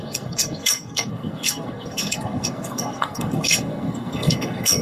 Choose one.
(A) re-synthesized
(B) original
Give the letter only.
A